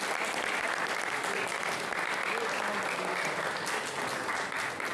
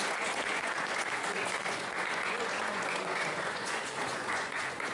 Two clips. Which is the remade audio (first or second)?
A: second